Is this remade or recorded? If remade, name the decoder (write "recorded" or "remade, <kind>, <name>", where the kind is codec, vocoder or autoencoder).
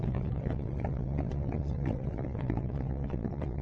remade, vocoder, WaveNeXt